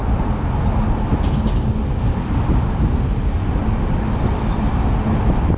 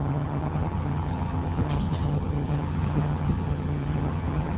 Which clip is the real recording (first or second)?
first